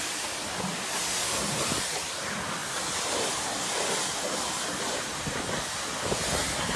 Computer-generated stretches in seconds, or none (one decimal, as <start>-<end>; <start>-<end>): 0.0-2.6